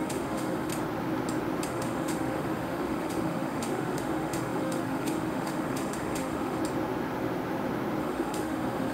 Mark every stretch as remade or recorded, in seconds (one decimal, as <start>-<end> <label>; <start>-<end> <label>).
0.0-0.7 remade; 0.7-1.7 recorded; 1.7-6.6 remade; 6.6-8.0 recorded; 8.0-8.9 remade